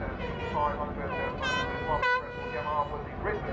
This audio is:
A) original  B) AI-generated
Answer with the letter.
A